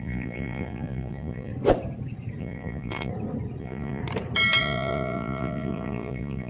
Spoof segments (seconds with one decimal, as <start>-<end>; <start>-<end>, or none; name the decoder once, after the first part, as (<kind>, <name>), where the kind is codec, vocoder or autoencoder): 0.0-1.5 (vocoder, Vocos); 2.4-3.1; 3.6-4.0; 4.6-6.5